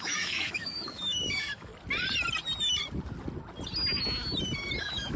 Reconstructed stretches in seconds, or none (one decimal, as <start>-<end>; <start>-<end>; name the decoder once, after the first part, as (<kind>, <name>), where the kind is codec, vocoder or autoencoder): 0.0-1.7 (autoencoder, DAC-VAE); 4.8-5.2